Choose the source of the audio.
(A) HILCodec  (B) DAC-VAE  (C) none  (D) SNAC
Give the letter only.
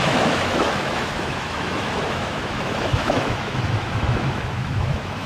B